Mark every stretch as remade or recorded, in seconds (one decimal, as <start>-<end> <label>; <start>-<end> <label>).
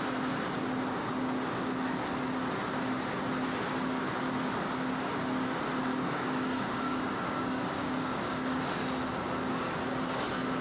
0.0-5.9 recorded; 5.9-8.6 remade; 8.6-10.6 recorded